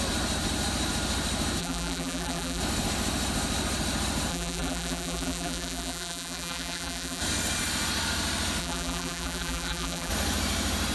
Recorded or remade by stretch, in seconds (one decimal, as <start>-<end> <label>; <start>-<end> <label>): 0.0-1.6 recorded; 1.6-2.6 remade; 2.6-4.3 recorded; 4.3-7.2 remade; 7.2-8.6 recorded; 8.6-10.1 remade; 10.1-10.9 recorded